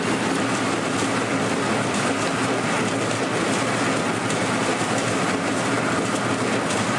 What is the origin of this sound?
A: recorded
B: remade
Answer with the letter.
A